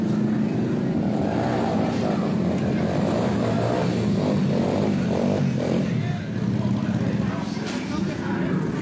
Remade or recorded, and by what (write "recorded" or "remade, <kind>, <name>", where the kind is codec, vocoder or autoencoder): recorded